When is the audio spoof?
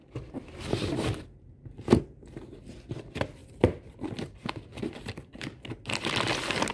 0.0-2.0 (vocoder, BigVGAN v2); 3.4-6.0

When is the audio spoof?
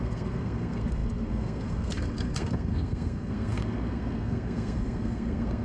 0.0-5.6 (codec, SNAC)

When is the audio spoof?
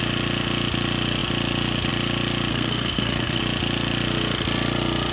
2.5-3.4 (codec, SNAC)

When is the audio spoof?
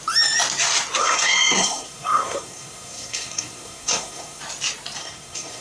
1.0-4.4 (codec, SNAC); 5.0-5.6